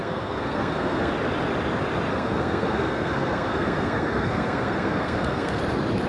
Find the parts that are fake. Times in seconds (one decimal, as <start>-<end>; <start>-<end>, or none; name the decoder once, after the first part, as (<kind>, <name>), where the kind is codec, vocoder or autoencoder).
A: 0.0-1.1 (codec, SNAC); 2.1-5.6